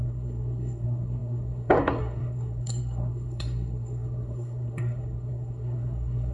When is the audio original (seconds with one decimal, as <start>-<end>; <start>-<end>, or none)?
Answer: none